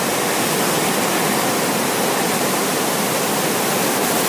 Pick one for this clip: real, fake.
real